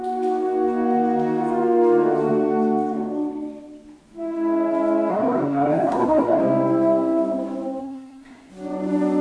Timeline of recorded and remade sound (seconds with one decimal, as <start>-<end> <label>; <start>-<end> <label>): 0.0-5.1 recorded; 5.1-6.4 remade; 6.4-7.8 recorded; 7.8-8.5 remade; 8.5-9.2 recorded